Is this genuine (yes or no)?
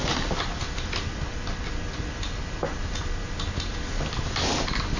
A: yes